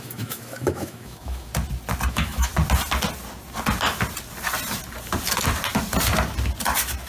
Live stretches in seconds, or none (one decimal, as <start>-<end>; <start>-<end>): 1.5-2.1; 2.5-7.1